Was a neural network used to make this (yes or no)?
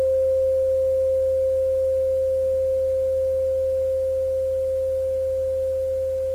no